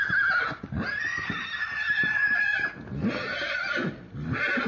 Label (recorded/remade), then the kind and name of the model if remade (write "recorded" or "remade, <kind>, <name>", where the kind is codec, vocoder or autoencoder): recorded